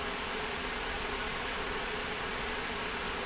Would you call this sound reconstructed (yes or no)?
yes